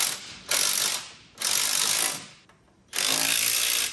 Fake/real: real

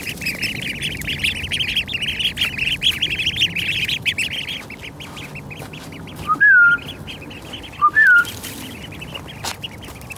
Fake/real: fake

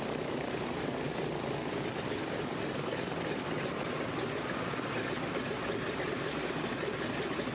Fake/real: real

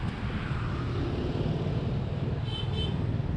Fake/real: real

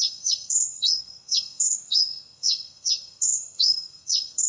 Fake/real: fake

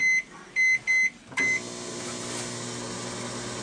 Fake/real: real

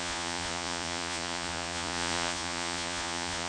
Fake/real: fake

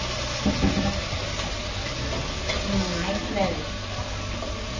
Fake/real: real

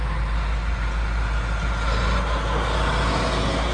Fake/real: real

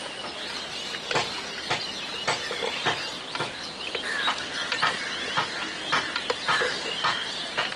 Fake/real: real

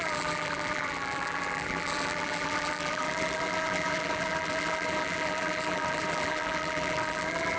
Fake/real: fake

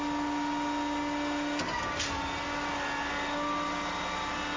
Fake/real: real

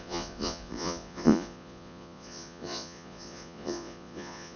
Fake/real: fake